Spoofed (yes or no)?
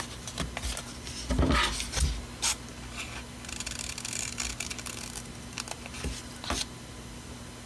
no